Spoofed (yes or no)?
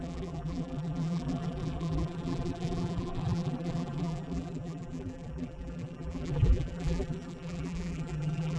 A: yes